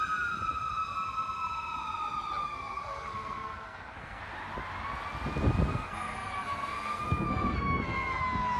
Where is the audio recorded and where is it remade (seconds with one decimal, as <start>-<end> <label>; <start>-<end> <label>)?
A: 0.0-2.4 recorded; 2.4-4.2 remade; 4.2-5.7 recorded; 5.7-8.2 remade; 8.2-8.6 recorded